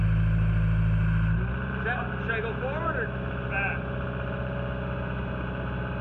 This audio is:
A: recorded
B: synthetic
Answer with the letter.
A